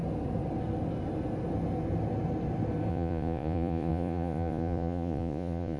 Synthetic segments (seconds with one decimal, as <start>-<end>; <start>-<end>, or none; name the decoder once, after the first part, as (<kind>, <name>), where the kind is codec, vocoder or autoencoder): 2.9-5.8 (vocoder, Vocos)